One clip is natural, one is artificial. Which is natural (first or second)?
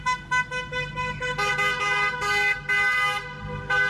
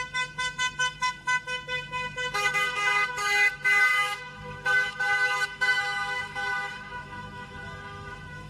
first